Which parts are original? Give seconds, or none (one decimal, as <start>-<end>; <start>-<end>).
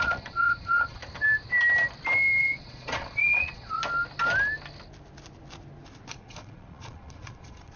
1.0-2.4; 3.8-6.1